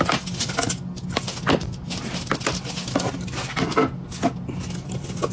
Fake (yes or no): no